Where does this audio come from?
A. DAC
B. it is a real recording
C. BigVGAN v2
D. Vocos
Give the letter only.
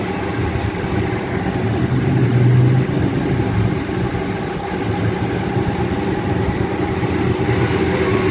B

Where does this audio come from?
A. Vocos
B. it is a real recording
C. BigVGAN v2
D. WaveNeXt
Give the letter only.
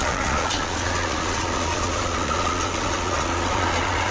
A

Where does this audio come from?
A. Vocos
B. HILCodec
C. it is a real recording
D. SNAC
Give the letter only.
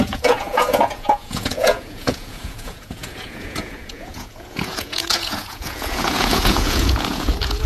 A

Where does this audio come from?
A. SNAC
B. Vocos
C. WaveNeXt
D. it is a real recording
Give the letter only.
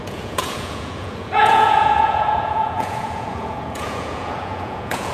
B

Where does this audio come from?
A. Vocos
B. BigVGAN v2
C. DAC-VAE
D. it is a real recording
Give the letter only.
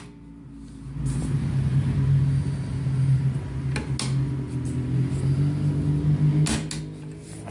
D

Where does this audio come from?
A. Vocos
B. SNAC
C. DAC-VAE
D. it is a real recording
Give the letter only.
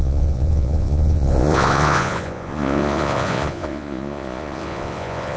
A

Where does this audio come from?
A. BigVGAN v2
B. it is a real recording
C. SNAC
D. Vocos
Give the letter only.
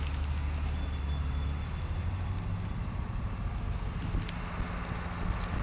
B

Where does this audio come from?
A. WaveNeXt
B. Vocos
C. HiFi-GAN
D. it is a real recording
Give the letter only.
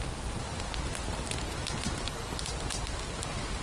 D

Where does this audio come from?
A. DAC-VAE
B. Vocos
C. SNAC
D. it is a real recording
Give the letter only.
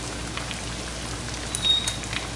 D